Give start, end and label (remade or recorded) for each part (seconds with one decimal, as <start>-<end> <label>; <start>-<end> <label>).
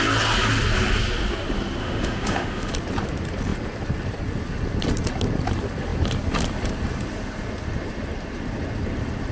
0.0-1.8 recorded; 1.8-2.7 remade; 2.7-9.3 recorded